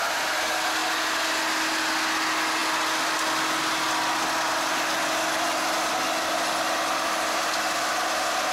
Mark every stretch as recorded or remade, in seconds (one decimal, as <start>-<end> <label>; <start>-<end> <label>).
0.0-8.5 recorded